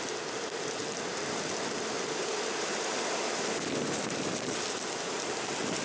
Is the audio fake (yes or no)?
no